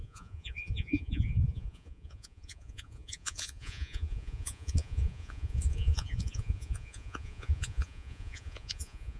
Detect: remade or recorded remade